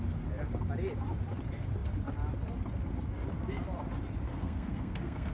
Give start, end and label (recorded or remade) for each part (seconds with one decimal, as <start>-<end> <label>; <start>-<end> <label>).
0.0-4.3 recorded; 4.3-5.3 remade